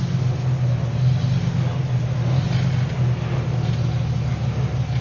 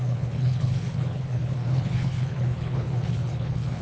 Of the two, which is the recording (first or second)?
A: first